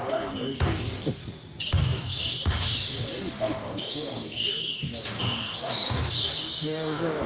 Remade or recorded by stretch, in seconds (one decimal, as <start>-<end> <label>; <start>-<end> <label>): 0.0-1.2 remade; 1.2-1.7 recorded; 1.7-7.3 remade